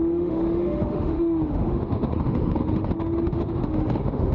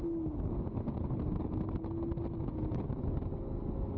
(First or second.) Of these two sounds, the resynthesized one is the first